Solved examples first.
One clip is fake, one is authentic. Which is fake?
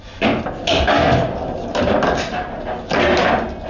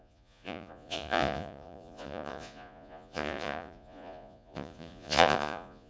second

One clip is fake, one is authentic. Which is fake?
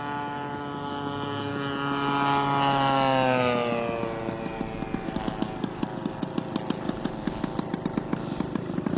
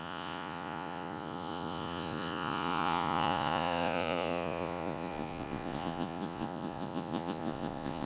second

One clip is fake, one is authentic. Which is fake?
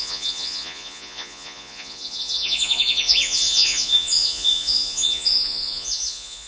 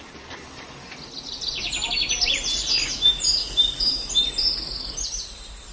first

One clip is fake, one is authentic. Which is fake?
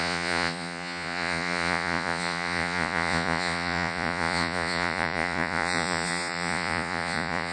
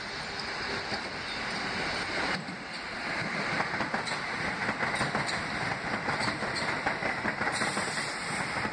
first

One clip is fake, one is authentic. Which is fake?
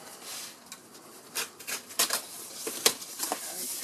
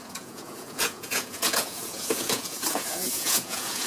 second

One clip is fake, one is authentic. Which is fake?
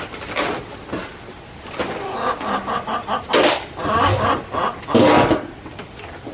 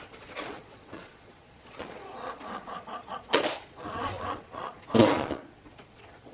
second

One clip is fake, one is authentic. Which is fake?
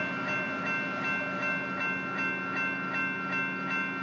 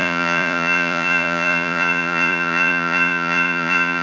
second